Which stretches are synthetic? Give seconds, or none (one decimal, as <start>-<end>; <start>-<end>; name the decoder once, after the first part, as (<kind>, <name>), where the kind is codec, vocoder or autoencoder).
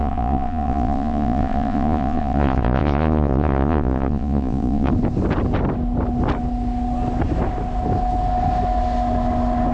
0.0-4.9 (vocoder, Vocos)